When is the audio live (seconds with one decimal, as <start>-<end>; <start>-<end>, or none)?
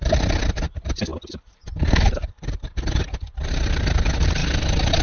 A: 0.0-5.0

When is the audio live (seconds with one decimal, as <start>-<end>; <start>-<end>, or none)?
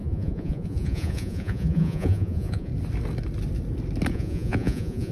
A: 2.7-4.1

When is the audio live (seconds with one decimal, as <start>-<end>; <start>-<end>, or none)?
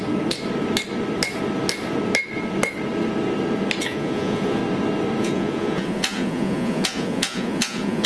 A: 0.0-3.8; 4.6-5.2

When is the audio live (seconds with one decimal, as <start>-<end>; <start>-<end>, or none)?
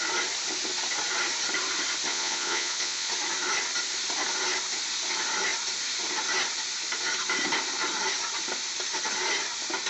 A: 0.0-2.1; 3.1-9.9